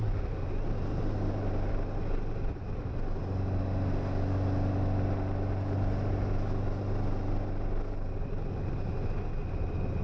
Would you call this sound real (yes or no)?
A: yes